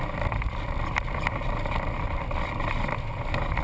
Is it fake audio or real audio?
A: real